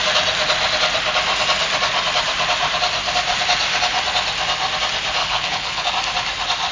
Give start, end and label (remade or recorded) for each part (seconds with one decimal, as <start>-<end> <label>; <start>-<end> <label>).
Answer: 0.0-5.2 recorded; 5.2-5.9 remade; 5.9-6.7 recorded